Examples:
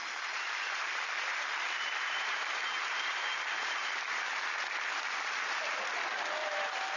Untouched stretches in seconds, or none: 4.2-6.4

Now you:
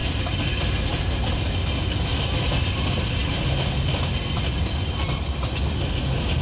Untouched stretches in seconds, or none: 0.0-6.4

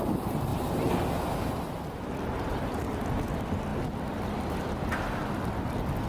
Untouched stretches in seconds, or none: 0.0-6.1

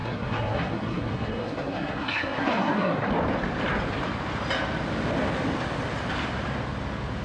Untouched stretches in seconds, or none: 3.1-7.2

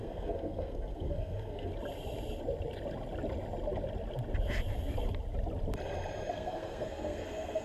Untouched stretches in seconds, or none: 1.7-6.3

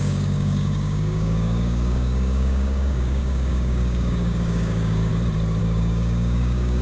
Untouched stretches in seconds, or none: 5.1-5.6

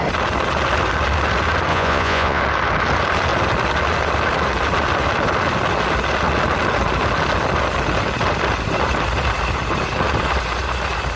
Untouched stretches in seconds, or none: 0.0-1.7; 2.4-11.2

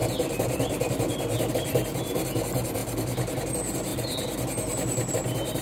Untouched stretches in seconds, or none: 0.0-3.9; 5.1-5.6